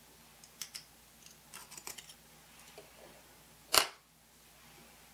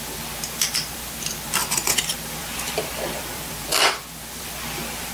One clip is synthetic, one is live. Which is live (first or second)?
first